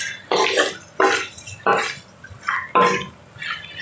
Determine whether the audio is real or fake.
real